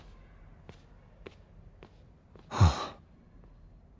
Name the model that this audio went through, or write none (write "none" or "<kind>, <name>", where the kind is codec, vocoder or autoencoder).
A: none